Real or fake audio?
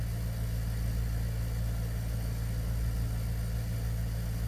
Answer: real